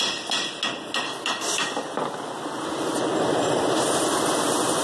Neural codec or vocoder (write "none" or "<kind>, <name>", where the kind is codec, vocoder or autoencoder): none